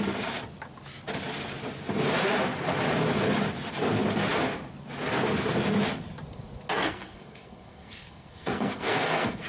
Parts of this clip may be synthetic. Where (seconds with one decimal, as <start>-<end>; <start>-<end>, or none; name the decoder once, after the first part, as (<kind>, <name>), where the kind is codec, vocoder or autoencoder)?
6.7-9.5 (codec, SNAC)